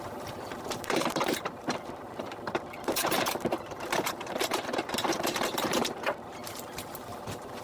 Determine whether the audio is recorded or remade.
remade